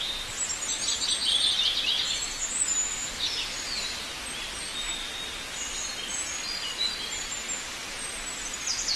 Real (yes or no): yes